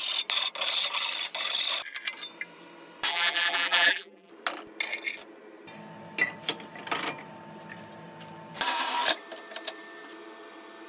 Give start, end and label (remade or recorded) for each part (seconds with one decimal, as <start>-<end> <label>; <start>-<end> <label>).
0.0-3.1 recorded; 3.1-4.3 remade; 4.3-10.9 recorded